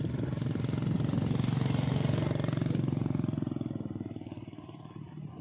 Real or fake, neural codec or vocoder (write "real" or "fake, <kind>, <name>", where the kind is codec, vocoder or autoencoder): fake, vocoder, BigVGAN v2